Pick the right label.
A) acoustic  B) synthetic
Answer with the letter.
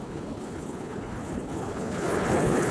B